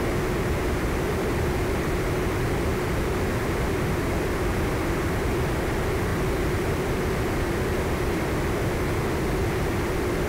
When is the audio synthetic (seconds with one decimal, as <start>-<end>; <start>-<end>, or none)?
2.7-4.7; 6.1-8.0